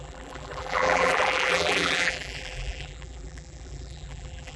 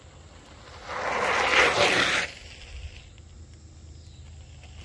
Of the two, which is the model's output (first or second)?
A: first